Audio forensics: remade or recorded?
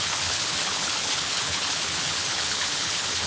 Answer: remade